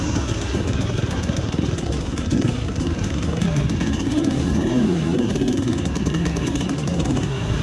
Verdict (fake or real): fake